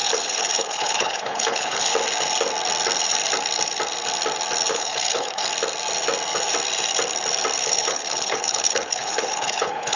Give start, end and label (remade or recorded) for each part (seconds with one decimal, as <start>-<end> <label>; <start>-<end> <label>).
0.0-1.9 remade; 1.9-4.7 recorded; 4.7-5.4 remade; 5.4-7.6 recorded; 7.6-10.0 remade